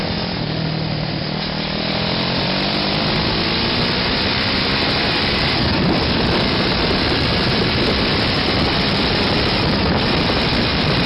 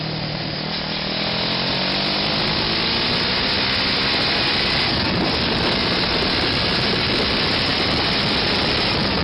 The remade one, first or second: first